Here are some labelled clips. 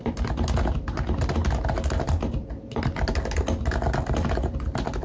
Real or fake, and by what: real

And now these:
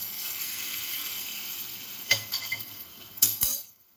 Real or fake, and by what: fake, codec, SNAC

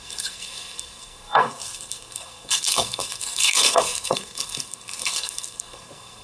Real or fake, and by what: fake, codec, SNAC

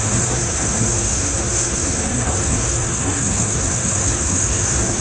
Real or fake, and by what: fake, codec, SNAC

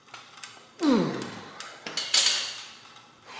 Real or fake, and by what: real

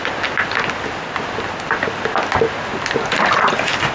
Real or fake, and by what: real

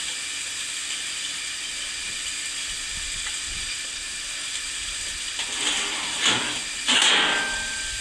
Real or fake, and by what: real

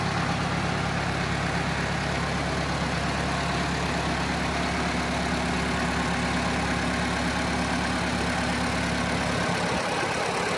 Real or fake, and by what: real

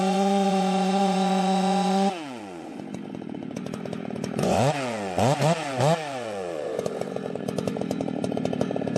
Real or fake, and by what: fake, vocoder, Vocos